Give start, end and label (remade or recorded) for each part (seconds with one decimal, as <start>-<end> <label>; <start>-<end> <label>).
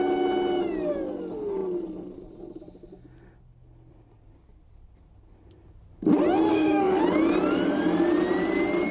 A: 0.0-6.5 recorded; 6.5-7.0 remade; 7.0-8.9 recorded